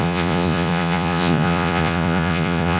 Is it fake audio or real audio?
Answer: fake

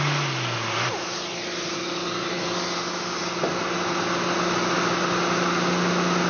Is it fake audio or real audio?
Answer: real